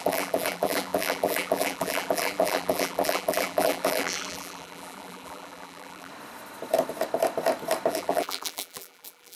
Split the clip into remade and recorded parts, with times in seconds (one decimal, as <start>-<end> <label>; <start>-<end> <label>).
0.0-6.1 remade; 6.1-7.9 recorded; 7.9-9.4 remade